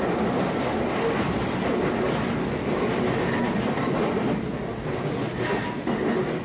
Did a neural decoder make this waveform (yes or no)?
no